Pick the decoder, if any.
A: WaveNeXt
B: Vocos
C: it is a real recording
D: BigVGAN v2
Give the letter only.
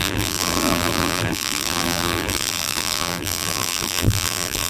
D